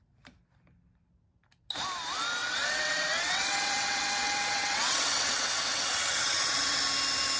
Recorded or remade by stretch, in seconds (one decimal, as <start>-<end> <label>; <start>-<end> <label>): 0.0-2.4 recorded; 2.4-6.8 remade; 6.8-7.4 recorded